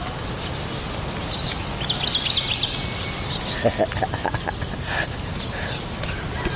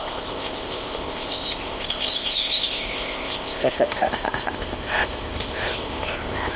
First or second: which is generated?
second